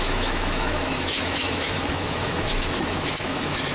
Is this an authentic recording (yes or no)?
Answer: no